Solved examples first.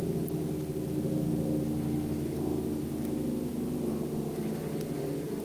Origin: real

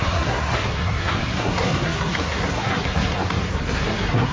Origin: fake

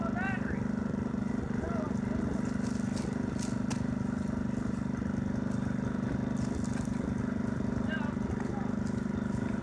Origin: real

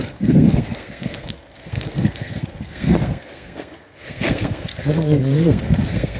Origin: fake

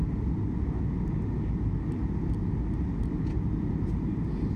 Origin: real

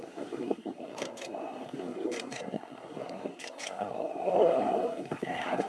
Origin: fake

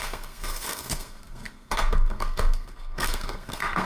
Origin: fake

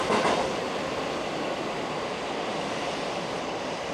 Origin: real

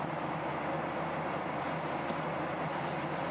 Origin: real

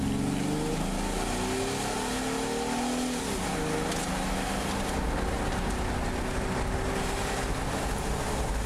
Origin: real